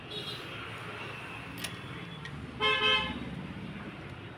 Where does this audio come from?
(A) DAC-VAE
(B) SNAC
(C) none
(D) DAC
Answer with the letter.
C